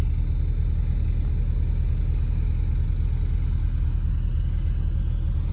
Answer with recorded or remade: recorded